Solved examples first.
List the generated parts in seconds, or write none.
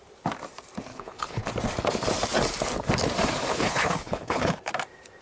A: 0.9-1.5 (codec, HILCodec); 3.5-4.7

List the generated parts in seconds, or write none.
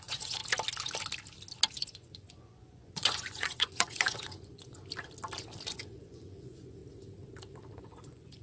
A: 0.0-0.4 (vocoder, Vocos); 1.7-4.8; 5.7-6.8; 7.8-8.4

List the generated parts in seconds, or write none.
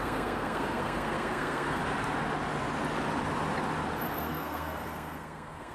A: 0.0-1.8 (codec, SNAC); 4.2-5.7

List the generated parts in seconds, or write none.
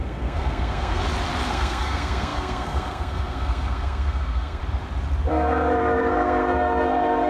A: 0.0-1.0 (codec, SNAC); 1.5-4.6; 5.3-7.3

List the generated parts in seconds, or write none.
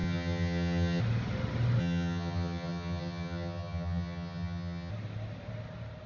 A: 0.0-1.0 (vocoder, HiFi-GAN); 1.8-4.9